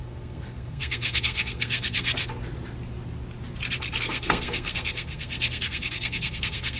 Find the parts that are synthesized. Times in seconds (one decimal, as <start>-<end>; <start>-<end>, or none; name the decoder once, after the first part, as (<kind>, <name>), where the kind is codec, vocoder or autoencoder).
0.0-2.1 (codec, SNAC); 4.0-6.8